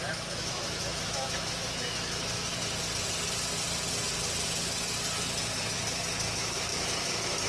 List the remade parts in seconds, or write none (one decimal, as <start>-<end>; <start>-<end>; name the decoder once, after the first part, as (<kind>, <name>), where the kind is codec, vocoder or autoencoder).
0.0-2.5 (autoencoder, DAC-VAE); 6.1-7.5